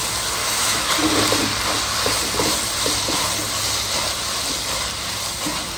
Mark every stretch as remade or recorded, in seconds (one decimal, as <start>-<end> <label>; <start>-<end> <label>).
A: 0.0-0.4 recorded; 0.4-0.9 remade; 0.9-5.8 recorded